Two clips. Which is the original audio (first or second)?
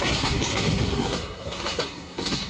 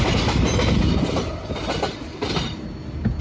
second